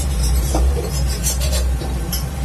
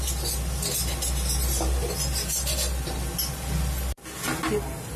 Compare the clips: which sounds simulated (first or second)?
first